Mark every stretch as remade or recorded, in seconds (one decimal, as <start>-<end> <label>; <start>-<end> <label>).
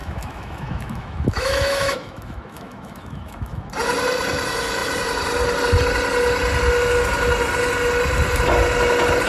0.0-3.7 remade; 3.7-9.3 recorded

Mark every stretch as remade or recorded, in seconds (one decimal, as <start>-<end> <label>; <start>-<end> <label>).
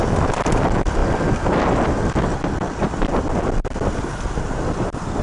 0.0-5.2 recorded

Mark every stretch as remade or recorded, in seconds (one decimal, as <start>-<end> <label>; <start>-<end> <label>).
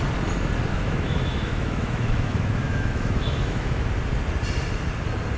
0.0-0.7 recorded; 0.7-3.9 remade; 3.9-5.4 recorded